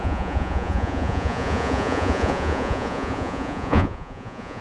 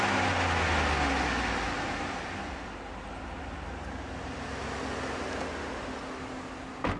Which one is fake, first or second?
first